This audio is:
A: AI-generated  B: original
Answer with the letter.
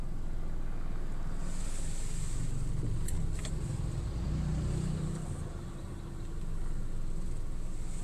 B